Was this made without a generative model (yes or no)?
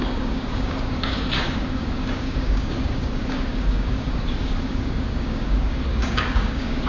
no